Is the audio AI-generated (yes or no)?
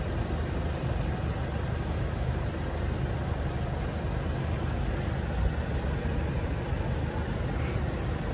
no